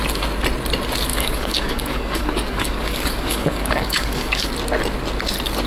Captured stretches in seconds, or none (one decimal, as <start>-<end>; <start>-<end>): 0.0-1.1; 4.5-5.7